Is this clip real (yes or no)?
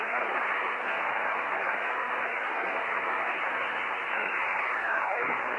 no